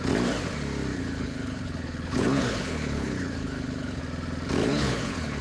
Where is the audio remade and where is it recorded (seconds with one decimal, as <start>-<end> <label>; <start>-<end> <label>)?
0.0-0.9 recorded; 0.9-4.0 remade; 4.0-4.6 recorded; 4.6-5.4 remade